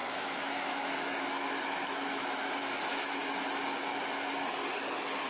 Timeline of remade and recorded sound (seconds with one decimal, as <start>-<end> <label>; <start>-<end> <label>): 0.0-3.2 remade; 3.2-5.3 recorded